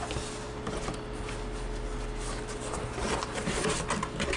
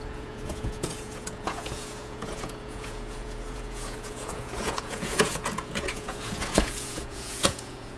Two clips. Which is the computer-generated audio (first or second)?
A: second